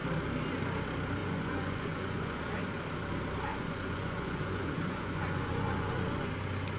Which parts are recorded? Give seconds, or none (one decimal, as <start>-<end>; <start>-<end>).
0.0-1.2; 2.6-3.5; 6.3-6.8